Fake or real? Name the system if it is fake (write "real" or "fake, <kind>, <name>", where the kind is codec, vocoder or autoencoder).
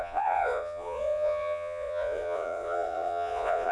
fake, vocoder, Vocos